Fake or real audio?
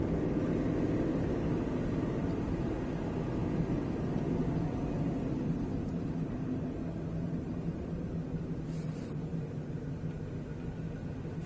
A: real